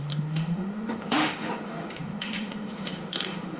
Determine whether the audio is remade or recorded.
remade